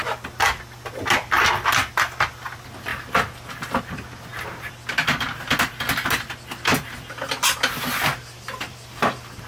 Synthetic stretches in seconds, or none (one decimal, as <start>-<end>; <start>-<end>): none